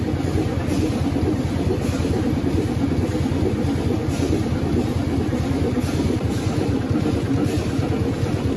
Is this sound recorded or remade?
recorded